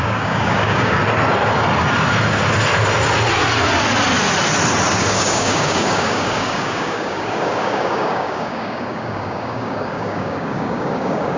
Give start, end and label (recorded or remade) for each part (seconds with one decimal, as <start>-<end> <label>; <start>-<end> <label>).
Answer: 0.0-1.0 remade; 1.0-5.0 recorded; 5.0-11.4 remade